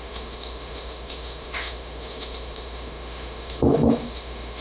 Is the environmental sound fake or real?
fake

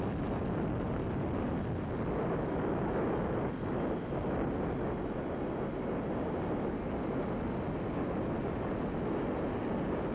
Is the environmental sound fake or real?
real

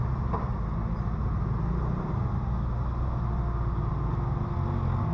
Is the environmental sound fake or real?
real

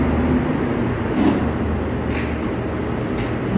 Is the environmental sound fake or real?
real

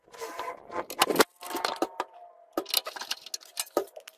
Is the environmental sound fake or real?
real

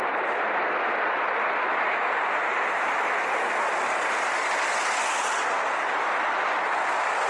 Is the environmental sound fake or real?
real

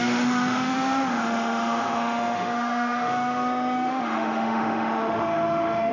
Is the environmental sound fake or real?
fake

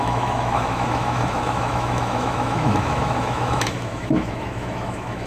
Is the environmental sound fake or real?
fake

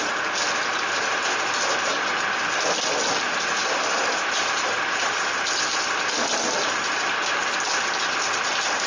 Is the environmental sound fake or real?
real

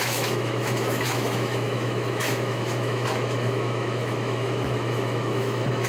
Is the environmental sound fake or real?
fake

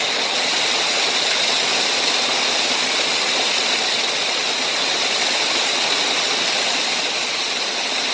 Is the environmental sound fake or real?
real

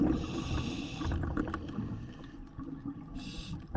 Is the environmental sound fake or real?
real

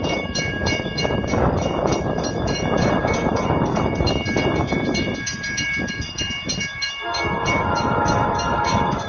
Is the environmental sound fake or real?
fake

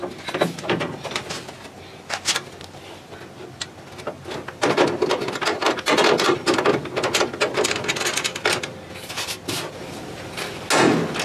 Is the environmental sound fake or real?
real